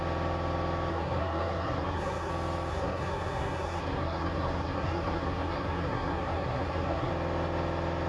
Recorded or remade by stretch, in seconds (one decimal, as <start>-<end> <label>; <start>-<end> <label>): 0.0-0.9 recorded; 0.9-2.3 remade; 2.3-2.7 recorded; 2.7-7.1 remade; 7.1-8.1 recorded